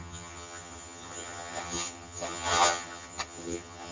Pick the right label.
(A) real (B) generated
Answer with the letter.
B